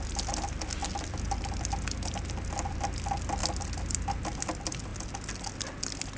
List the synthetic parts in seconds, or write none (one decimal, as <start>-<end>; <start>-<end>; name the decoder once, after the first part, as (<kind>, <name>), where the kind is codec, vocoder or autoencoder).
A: none